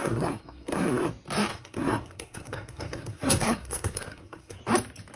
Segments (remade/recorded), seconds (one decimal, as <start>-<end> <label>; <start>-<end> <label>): 0.0-1.1 remade; 1.1-1.5 recorded; 1.5-4.6 remade; 4.6-5.2 recorded